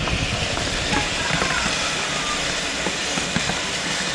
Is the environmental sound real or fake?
real